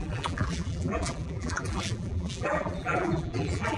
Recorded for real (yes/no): no